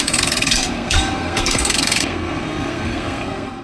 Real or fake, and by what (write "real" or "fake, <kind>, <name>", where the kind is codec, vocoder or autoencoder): fake, codec, SNAC